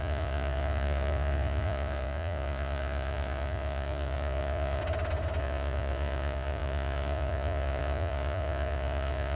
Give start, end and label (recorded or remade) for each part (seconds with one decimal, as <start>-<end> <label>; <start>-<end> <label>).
0.0-4.8 remade; 4.8-5.4 recorded; 5.4-9.3 remade